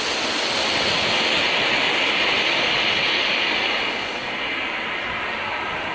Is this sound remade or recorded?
recorded